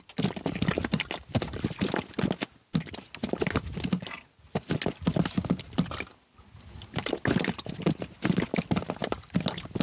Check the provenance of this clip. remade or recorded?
recorded